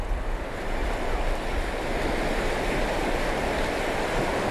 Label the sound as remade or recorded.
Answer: recorded